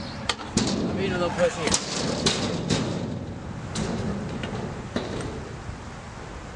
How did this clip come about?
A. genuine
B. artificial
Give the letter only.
A